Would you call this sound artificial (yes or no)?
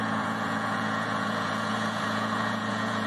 yes